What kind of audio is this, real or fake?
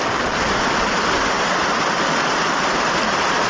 real